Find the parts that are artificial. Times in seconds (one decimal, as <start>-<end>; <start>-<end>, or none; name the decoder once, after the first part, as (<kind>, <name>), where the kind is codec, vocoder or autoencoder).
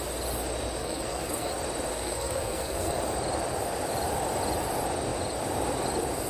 0.8-1.5 (codec, SNAC); 1.9-3.0